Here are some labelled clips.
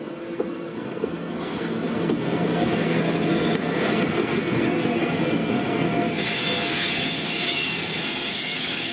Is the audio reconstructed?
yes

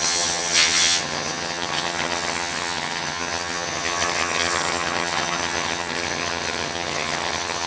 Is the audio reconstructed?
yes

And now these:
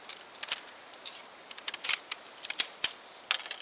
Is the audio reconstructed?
no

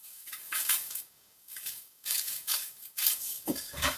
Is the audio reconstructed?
yes